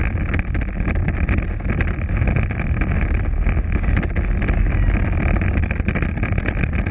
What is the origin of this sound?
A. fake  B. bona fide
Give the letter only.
B